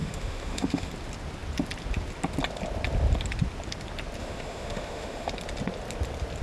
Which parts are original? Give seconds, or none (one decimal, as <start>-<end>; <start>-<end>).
0.9-4.2; 5.3-6.4